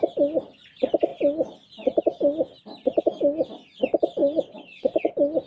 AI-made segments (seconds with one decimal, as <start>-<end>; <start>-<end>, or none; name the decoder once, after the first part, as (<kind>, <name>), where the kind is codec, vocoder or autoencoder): 4.2-5.1 (vocoder, WaveNeXt)